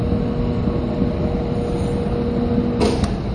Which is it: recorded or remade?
recorded